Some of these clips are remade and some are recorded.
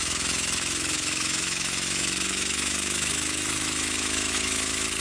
remade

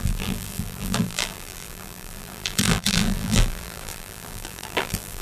remade